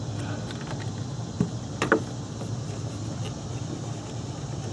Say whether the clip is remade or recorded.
recorded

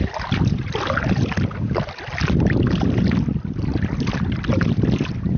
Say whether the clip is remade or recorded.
recorded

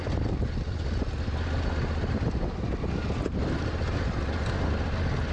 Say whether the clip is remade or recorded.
recorded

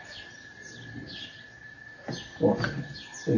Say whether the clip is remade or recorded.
recorded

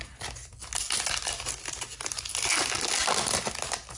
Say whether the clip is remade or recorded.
recorded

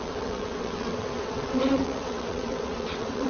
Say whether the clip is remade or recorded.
remade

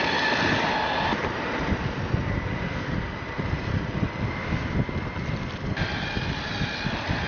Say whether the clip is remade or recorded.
recorded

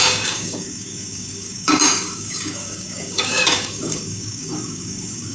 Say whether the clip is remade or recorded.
remade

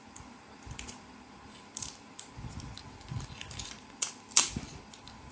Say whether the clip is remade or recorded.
remade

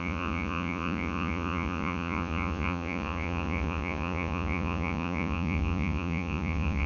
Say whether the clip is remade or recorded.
remade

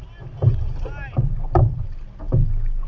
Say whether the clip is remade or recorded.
recorded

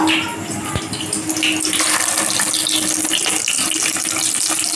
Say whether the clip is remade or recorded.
recorded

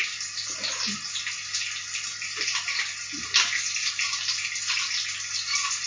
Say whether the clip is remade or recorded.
recorded